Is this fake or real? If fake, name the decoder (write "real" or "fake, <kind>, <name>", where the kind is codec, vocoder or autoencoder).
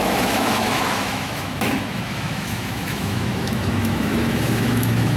fake, autoencoder, DAC-VAE